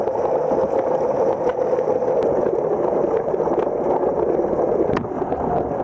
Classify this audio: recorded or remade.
recorded